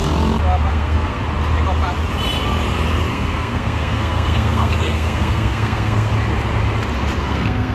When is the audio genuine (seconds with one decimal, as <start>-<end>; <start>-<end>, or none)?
0.0-0.7; 1.2-3.1; 6.1-7.2